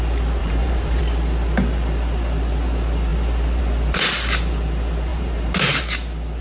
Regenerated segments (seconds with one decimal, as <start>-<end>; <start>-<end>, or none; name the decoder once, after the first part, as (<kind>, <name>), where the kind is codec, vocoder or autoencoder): 0.4-1.0 (vocoder, BigVGAN v2); 5.1-5.8